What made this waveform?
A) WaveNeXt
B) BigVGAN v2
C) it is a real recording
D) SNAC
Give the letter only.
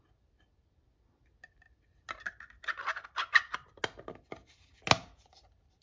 C